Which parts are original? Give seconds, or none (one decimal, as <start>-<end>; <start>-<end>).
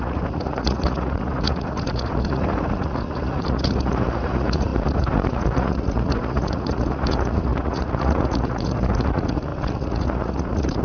none